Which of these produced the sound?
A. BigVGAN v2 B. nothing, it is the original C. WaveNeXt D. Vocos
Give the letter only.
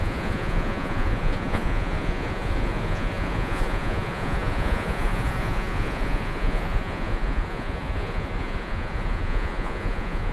D